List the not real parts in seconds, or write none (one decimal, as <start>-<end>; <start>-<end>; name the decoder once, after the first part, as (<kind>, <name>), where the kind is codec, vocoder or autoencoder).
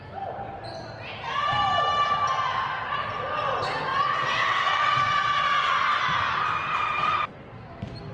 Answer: 3.9-6.0 (vocoder, WaveNeXt)